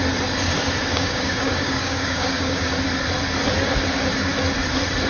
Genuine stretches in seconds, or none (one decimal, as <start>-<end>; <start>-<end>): 0.0-0.9; 2.7-5.1